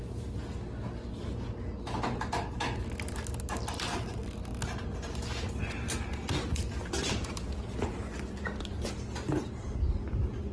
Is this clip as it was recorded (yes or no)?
yes